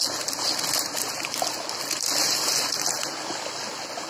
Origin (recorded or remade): recorded